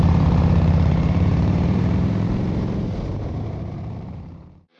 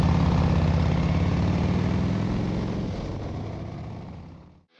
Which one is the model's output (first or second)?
first